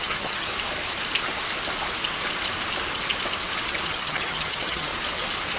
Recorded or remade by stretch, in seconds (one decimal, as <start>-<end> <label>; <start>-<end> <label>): 0.0-0.5 remade; 0.5-3.9 recorded; 3.9-4.9 remade; 4.9-5.6 recorded